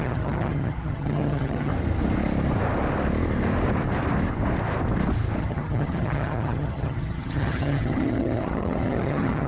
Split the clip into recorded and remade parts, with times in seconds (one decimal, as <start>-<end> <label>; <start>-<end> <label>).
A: 0.0-1.7 remade; 1.7-5.4 recorded; 5.4-9.5 remade